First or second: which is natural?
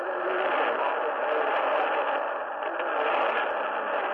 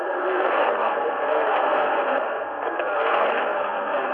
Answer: first